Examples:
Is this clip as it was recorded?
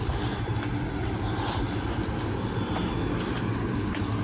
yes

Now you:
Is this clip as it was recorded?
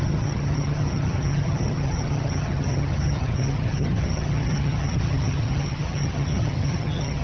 no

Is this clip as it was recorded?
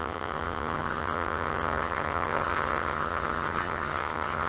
no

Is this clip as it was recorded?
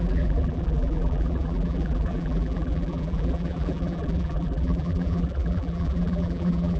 no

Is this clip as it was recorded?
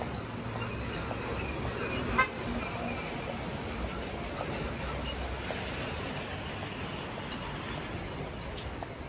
yes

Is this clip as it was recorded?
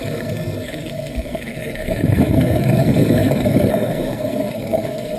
no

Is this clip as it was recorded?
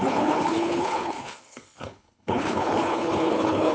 no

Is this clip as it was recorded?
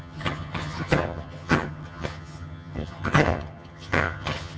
no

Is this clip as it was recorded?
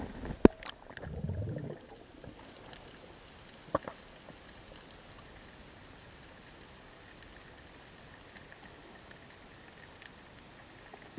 yes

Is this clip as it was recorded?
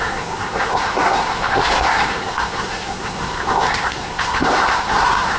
no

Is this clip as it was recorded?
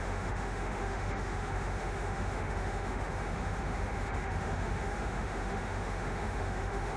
no